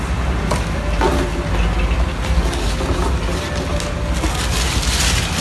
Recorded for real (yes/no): yes